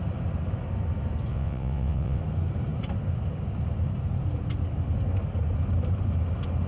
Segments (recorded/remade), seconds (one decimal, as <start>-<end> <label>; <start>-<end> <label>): 0.0-1.3 recorded; 1.3-2.2 remade; 2.2-6.7 recorded

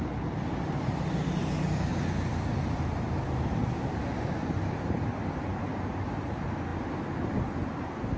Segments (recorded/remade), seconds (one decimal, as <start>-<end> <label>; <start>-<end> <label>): 0.0-1.9 recorded; 1.9-5.1 remade; 5.1-5.5 recorded; 5.5-6.3 remade; 6.3-8.2 recorded

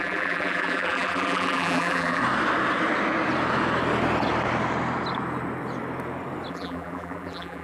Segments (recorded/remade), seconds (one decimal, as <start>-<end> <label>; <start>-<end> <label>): 0.0-2.2 remade; 2.2-6.5 recorded; 6.5-7.6 remade

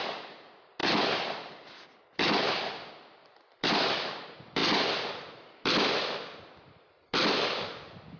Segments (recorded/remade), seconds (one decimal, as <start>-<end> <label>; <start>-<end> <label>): 0.0-8.2 recorded

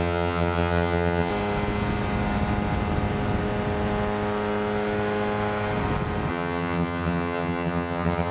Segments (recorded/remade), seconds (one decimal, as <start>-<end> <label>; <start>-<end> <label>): 0.0-1.3 remade; 1.3-6.3 recorded; 6.3-8.3 remade